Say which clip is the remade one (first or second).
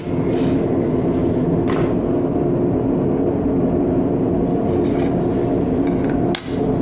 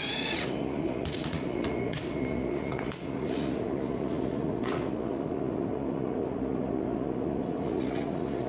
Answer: second